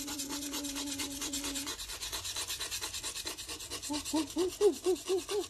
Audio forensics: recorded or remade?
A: remade